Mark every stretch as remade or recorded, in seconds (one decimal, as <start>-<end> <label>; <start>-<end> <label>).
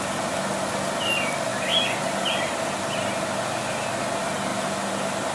0.0-5.3 recorded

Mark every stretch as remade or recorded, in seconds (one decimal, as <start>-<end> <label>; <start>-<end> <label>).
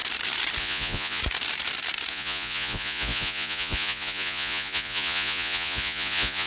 0.0-0.6 recorded; 0.6-1.2 remade; 1.2-2.1 recorded; 2.1-6.5 remade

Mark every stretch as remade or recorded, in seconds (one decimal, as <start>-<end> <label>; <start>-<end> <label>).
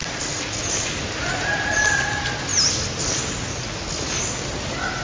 0.0-5.0 recorded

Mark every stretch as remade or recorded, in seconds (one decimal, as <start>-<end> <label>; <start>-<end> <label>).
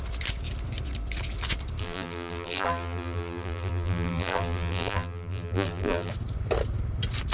0.0-1.8 recorded; 1.8-6.1 remade; 6.1-7.3 recorded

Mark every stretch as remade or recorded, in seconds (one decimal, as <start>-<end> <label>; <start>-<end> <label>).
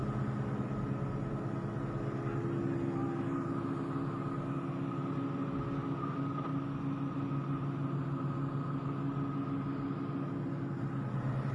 0.0-11.5 recorded